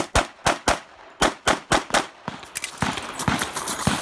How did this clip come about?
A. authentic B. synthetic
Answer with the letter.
A